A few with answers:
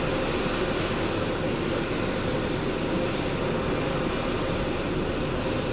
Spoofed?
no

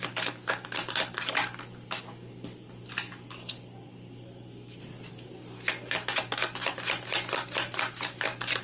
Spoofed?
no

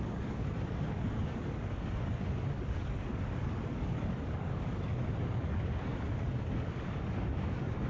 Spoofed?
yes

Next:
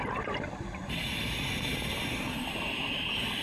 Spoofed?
no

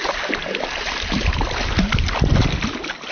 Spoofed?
no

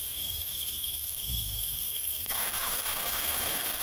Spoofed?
yes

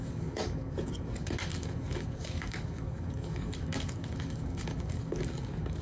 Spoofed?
yes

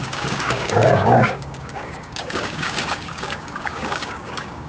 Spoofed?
yes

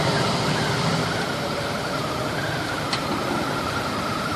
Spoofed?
no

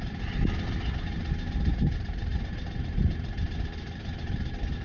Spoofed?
no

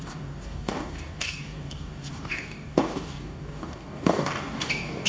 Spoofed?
yes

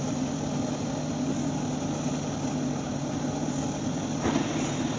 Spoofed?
no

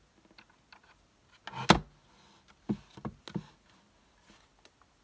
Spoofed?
no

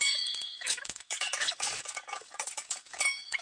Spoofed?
yes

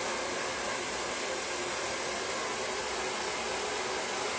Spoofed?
no